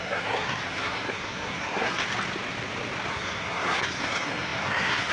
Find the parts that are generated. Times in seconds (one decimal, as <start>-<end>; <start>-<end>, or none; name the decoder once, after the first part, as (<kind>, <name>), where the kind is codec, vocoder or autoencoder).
0.0-2.0 (codec, SNAC); 3.1-5.1